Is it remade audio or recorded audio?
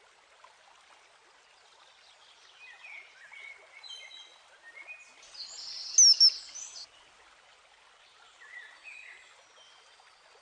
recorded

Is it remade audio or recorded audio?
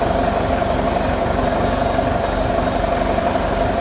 recorded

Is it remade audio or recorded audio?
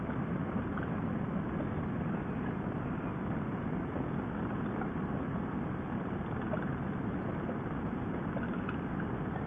recorded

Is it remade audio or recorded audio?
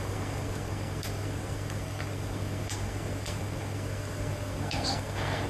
remade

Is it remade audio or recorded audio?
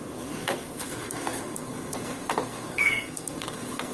remade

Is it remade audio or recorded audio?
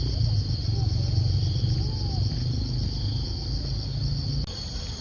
recorded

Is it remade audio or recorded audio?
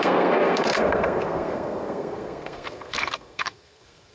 remade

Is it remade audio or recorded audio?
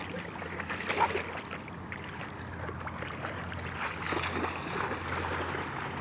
recorded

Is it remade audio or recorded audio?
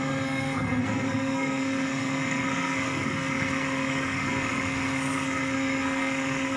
remade